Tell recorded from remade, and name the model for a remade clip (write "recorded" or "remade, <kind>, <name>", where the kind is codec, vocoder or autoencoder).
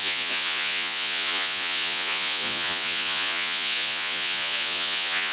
remade, vocoder, Vocos